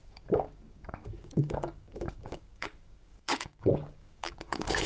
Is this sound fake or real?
fake